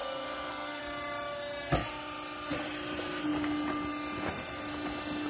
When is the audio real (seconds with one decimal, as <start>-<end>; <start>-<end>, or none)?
0.8-5.3